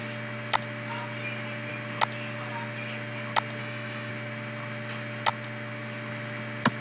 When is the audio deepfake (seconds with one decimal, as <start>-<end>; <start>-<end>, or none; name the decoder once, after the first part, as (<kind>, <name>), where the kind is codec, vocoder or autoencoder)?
3.6-4.1 (autoencoder, DAC-VAE)